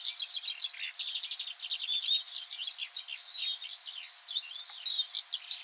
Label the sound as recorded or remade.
recorded